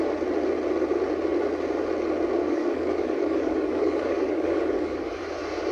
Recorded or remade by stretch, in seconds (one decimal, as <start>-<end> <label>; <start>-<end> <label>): 0.0-2.4 recorded; 2.4-5.2 remade; 5.2-5.7 recorded